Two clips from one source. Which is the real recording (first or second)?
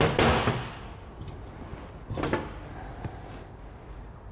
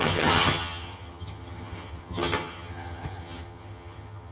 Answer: first